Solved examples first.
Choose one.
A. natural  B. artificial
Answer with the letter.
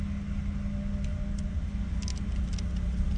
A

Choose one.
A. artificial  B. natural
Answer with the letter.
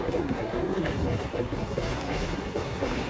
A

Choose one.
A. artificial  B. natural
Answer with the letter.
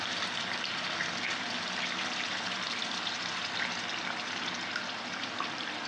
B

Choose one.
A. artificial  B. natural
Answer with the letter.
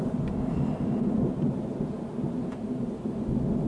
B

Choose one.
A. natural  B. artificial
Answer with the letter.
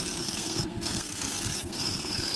B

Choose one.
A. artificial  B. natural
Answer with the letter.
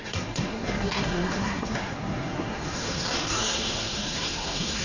A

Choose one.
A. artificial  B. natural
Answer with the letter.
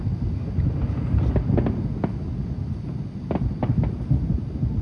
B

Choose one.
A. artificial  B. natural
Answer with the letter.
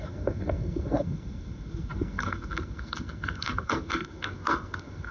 A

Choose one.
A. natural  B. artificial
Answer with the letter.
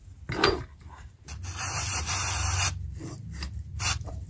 A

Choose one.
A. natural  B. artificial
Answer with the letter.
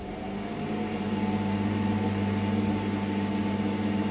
A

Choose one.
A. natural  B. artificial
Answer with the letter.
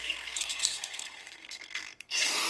B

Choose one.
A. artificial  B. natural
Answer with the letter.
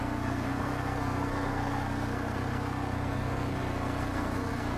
A